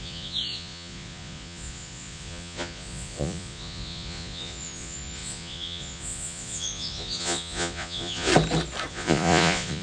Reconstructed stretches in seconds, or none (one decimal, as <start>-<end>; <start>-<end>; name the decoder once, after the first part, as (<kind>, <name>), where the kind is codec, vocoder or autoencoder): 0.0-8.3 (vocoder, Vocos); 8.9-9.8